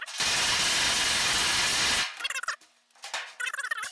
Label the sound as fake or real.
real